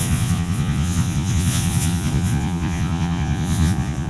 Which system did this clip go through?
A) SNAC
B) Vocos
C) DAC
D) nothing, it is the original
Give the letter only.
B